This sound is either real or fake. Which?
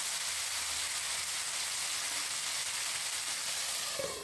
real